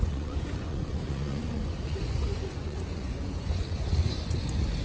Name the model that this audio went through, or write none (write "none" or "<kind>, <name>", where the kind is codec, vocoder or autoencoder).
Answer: vocoder, Vocos